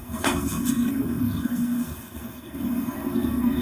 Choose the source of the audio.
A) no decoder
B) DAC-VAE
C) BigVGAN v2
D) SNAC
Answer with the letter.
D